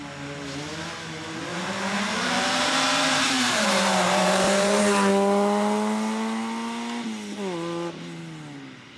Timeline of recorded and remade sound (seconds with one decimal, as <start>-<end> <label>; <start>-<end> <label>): 0.0-1.5 recorded; 1.5-4.8 remade; 4.8-9.0 recorded